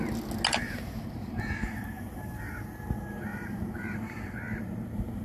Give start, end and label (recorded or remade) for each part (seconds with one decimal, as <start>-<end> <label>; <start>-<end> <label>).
0.0-0.6 recorded; 0.6-2.7 remade; 2.7-3.3 recorded; 3.3-4.0 remade; 4.0-5.2 recorded